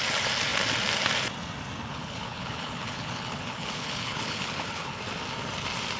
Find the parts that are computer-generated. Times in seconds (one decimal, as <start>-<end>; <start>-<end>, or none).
1.9-5.0